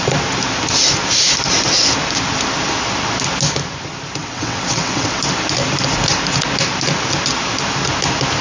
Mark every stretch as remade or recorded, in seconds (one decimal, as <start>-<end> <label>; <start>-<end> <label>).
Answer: 0.0-4.2 recorded; 4.2-5.2 remade; 5.2-8.4 recorded